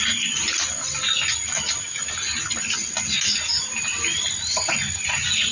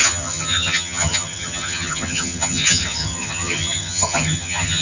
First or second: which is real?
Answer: first